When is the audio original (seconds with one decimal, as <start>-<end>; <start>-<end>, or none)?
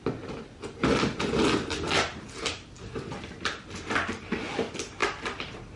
0.0-5.8